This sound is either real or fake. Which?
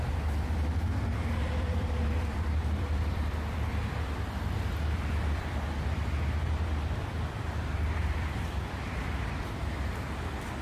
fake